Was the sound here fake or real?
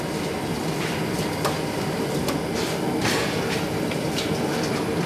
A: real